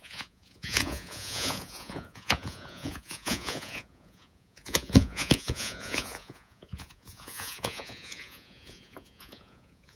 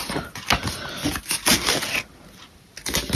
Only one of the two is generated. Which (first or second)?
first